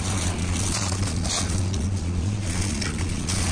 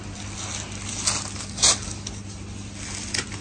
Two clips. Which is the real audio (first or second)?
second